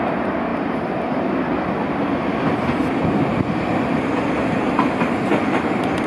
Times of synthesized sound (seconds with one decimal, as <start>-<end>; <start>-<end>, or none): none